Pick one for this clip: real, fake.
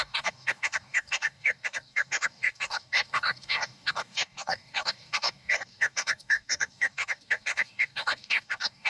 fake